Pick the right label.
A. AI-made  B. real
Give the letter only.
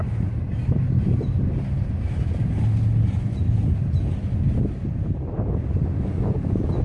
B